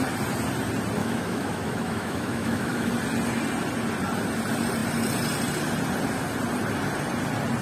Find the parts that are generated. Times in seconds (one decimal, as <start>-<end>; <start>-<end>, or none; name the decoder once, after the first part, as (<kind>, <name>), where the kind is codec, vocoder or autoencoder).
1.0-2.9 (autoencoder, DAC-VAE)